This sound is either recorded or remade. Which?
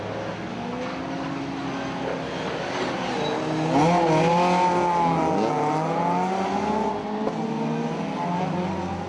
recorded